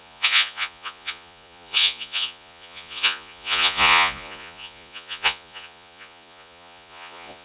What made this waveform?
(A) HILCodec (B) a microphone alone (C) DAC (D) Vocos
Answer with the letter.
D